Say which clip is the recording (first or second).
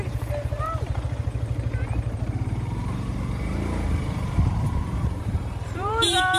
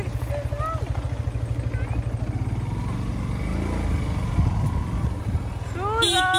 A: second